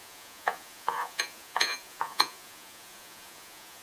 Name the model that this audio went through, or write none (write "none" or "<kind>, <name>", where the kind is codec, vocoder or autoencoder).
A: vocoder, Vocos